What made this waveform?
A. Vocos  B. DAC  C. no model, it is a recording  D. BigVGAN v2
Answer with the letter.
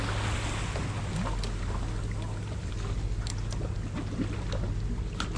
C